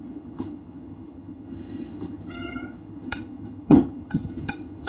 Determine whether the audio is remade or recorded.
remade